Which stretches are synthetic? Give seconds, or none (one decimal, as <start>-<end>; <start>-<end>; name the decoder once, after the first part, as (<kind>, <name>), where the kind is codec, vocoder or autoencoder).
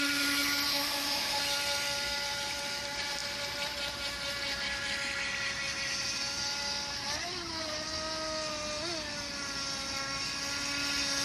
0.7-1.4 (autoencoder, DAC-VAE)